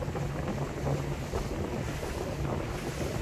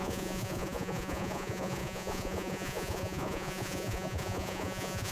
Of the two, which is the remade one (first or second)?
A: second